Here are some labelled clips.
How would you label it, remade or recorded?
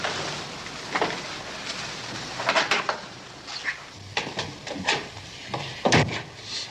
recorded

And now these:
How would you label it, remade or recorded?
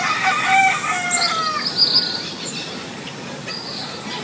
recorded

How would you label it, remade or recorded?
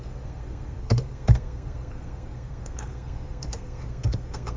remade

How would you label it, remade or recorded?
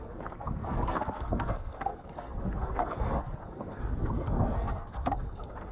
remade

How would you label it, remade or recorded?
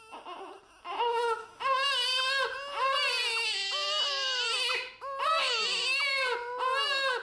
recorded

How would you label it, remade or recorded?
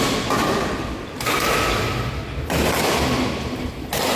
recorded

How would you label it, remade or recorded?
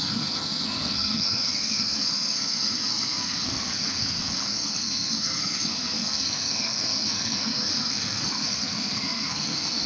remade